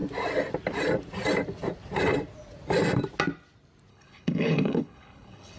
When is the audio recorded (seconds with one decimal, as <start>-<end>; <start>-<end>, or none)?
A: 0.0-3.9